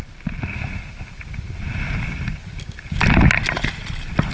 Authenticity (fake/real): real